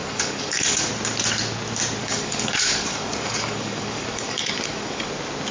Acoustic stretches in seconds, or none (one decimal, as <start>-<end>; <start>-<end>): 0.9-2.0; 5.1-5.5